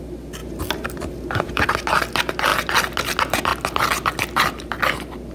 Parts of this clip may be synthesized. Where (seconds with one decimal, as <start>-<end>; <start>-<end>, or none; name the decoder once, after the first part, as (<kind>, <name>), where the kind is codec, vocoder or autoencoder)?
0.4-1.6 (vocoder, BigVGAN v2)